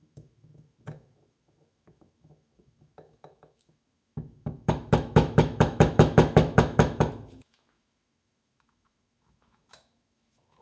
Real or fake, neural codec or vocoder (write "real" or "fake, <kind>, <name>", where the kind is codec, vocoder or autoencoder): fake, autoencoder, DAC-VAE